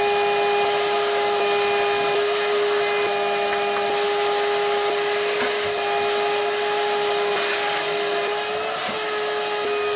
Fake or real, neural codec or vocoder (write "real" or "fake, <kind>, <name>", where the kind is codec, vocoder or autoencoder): real